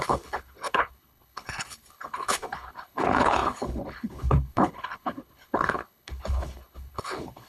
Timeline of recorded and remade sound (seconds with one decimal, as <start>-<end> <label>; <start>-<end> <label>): 0.0-7.5 remade